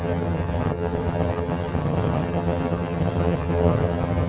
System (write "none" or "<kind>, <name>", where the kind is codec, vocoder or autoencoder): vocoder, HiFi-GAN